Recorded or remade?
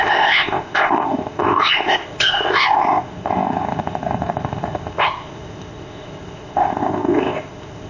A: remade